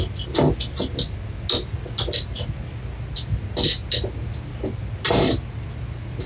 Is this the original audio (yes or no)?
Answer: yes